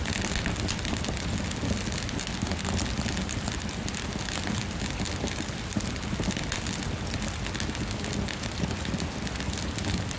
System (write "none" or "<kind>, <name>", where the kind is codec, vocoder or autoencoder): none